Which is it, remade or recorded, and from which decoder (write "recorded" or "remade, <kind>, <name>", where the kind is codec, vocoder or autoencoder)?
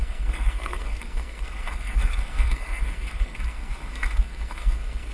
remade, codec, SNAC